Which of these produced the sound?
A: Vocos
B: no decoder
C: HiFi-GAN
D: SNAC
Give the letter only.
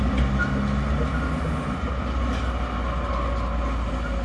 B